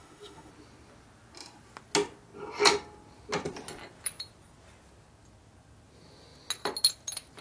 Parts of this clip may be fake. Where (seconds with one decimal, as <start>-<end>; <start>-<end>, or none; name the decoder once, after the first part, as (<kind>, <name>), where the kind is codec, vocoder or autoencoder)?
0.0-0.5 (autoencoder, DAC-VAE)

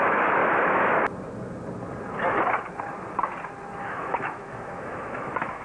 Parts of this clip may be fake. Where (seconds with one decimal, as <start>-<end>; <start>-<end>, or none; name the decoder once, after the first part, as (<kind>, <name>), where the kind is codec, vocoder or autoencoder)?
0.0-0.4 (autoencoder, DAC-VAE); 3.8-5.6

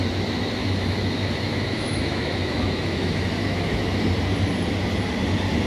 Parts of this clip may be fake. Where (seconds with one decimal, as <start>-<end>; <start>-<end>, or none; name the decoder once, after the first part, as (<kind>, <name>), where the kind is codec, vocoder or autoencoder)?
0.6-4.0 (autoencoder, DAC-VAE)

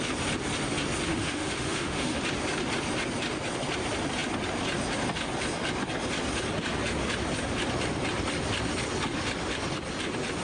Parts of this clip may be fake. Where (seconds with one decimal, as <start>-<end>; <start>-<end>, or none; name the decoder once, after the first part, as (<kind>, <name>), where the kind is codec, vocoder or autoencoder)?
1.1-2.2 (autoencoder, DAC-VAE)

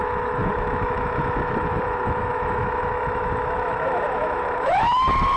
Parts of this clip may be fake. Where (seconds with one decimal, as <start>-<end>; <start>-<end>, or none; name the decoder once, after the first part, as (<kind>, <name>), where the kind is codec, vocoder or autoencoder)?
0.0-5.4 (autoencoder, DAC-VAE)

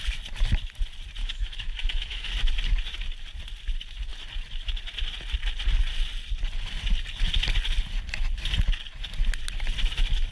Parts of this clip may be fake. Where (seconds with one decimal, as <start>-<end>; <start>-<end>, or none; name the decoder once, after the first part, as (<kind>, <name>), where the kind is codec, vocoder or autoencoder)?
1.2-2.3 (autoencoder, DAC-VAE)